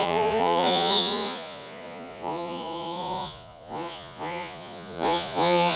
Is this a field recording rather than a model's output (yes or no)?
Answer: no